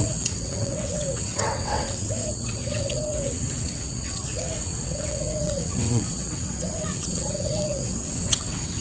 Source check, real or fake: fake